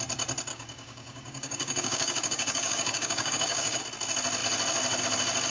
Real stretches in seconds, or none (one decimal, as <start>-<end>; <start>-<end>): 0.0-0.5; 3.8-5.5